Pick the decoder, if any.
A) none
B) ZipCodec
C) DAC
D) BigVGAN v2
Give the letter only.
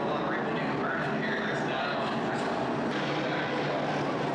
A